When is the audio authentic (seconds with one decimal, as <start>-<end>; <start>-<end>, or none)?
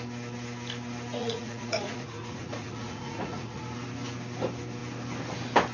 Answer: 0.0-1.2; 3.6-5.7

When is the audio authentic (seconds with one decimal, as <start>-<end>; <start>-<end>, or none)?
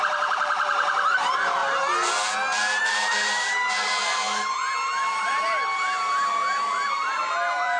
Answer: 1.6-2.8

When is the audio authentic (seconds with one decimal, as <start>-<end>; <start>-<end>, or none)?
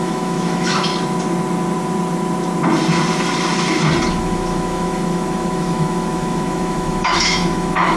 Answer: 0.9-4.1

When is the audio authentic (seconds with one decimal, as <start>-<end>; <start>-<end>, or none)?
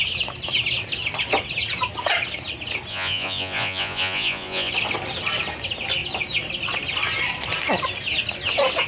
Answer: 0.0-2.9; 4.7-8.9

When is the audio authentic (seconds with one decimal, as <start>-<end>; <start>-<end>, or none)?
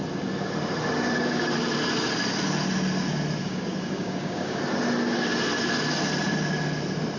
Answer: 0.0-3.4; 4.6-7.2